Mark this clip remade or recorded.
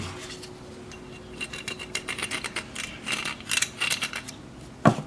recorded